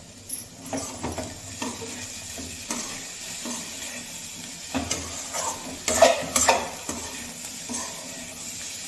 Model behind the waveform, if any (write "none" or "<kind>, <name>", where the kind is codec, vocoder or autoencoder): none